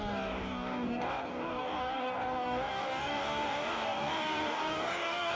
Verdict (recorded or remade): remade